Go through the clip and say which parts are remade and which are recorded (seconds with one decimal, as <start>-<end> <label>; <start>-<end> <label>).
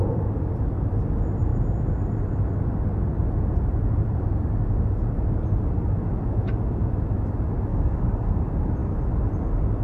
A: 0.0-7.7 recorded; 7.7-8.3 remade; 8.3-9.8 recorded